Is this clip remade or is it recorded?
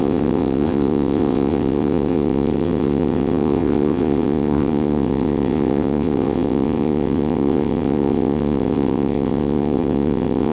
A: remade